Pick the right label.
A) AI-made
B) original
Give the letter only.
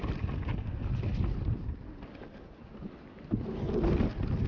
B